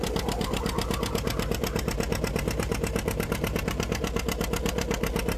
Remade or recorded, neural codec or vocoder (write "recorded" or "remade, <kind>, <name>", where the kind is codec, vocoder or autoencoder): remade, vocoder, BigVGAN v2